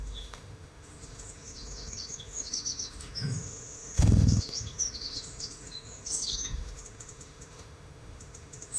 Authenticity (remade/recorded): remade